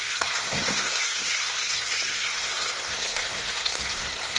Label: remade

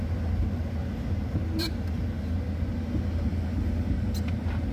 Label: recorded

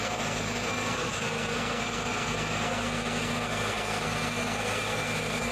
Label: remade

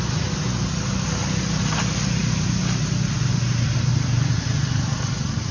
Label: recorded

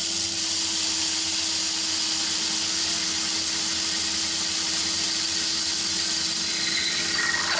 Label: recorded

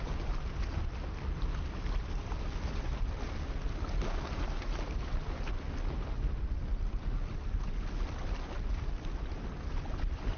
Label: recorded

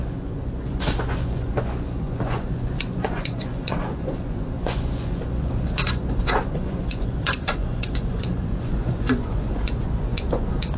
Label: remade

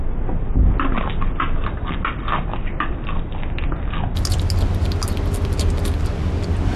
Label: recorded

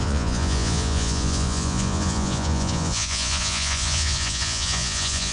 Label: remade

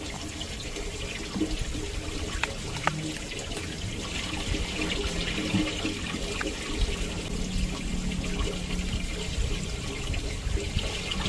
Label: recorded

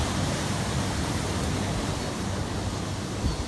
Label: recorded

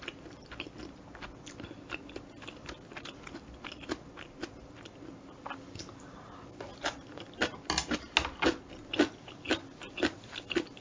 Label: recorded